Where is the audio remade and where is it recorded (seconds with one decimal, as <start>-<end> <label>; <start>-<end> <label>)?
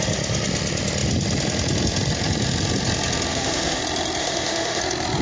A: 0.0-3.3 recorded; 3.3-3.8 remade; 3.8-4.2 recorded; 4.2-4.8 remade; 4.8-5.2 recorded